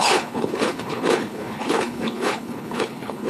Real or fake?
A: fake